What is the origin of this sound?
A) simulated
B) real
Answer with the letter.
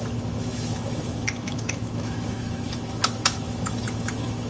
A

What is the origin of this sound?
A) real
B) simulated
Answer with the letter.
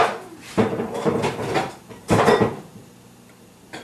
A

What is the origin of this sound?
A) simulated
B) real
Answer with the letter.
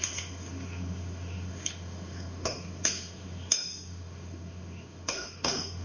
A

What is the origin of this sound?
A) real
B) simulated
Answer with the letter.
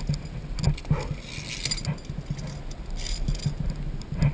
A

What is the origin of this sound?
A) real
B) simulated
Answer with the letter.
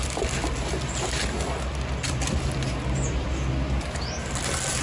A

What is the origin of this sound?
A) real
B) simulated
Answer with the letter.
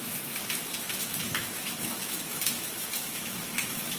B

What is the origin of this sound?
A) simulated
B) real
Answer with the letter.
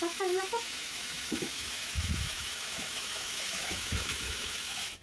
A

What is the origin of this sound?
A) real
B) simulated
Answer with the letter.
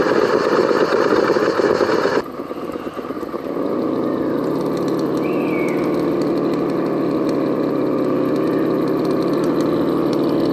A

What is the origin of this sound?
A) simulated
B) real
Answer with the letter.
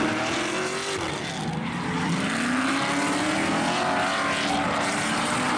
B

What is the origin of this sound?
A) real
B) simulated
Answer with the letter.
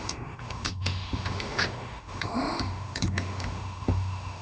B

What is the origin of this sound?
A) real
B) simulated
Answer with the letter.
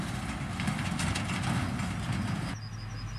A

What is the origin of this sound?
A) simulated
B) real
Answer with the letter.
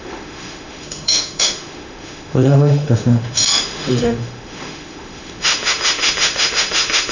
A